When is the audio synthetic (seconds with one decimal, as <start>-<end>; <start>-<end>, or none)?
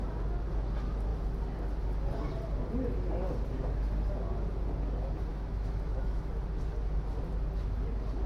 5.3-6.3